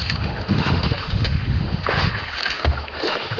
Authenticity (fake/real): fake